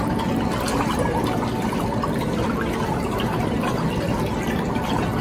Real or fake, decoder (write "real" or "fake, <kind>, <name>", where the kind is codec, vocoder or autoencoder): real